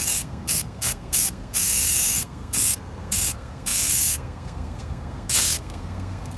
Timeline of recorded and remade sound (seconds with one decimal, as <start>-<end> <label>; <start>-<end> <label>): 0.0-6.4 remade